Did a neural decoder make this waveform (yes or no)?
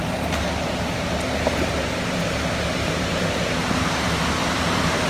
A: no